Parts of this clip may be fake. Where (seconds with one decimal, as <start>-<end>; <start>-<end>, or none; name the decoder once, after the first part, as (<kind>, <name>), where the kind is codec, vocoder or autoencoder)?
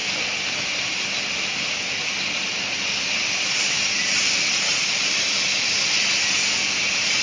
none